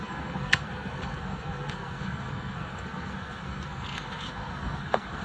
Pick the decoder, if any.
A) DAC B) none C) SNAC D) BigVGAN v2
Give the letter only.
C